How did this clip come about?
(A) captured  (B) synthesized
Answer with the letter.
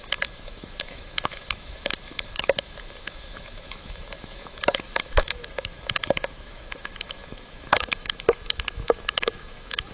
B